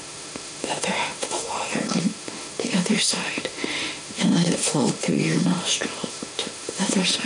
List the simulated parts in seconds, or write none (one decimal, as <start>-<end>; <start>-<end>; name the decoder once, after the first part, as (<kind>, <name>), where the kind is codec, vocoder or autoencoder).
0.0-7.2 (autoencoder, DAC-VAE)